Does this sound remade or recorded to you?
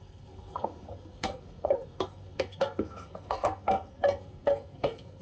remade